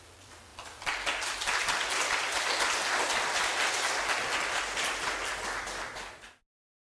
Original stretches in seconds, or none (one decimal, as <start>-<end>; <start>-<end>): 0.0-6.9